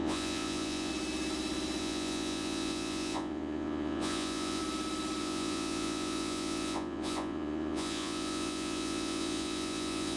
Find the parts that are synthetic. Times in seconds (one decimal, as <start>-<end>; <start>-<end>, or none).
0.0-0.9; 1.8-4.6; 5.2-10.2